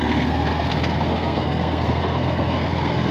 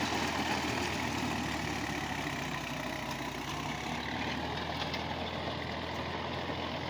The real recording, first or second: second